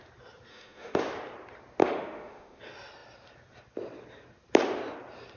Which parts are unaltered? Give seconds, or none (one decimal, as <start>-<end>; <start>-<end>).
0.0-0.5; 1.0-1.8; 2.6-5.4